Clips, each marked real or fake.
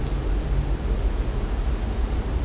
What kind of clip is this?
real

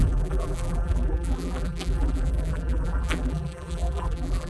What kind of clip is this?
fake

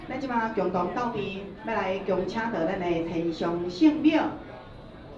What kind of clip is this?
real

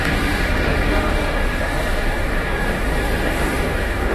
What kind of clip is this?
fake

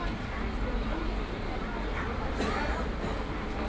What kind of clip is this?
real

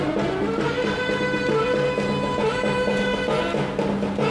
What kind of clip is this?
real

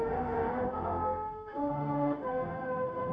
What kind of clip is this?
fake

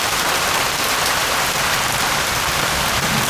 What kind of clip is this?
real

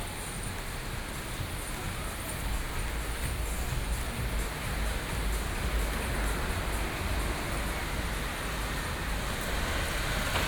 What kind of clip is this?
real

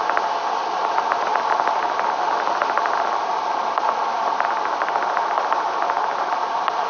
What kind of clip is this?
real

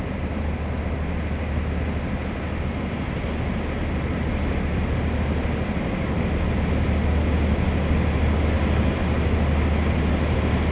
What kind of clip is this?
real